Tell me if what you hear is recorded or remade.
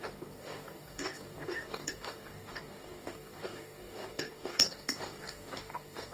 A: remade